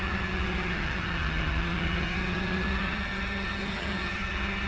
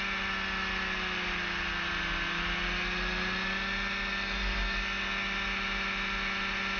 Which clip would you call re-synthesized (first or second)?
first